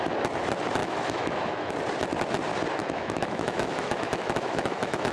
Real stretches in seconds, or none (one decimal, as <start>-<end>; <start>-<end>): 0.0-0.8; 1.7-2.8

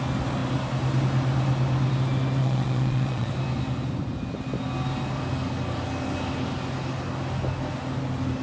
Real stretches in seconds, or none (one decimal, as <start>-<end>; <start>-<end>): 0.0-2.4; 3.3-8.4

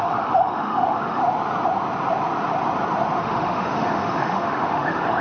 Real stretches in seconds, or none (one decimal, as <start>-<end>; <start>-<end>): 1.2-3.2

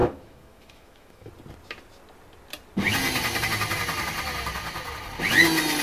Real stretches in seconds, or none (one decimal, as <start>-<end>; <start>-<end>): 1.3-5.8

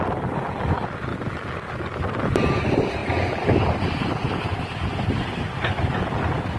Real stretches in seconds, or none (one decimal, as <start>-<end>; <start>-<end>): 0.0-3.0; 4.3-6.6

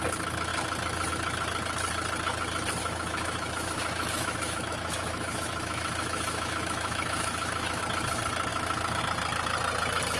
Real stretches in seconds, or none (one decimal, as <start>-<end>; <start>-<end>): 0.0-2.8; 7.8-8.5; 9.0-10.2